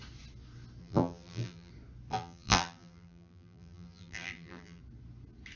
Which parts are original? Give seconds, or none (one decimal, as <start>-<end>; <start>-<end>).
0.0-0.8; 1.7-2.1; 4.8-5.6